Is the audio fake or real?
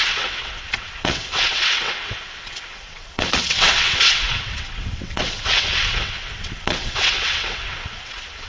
fake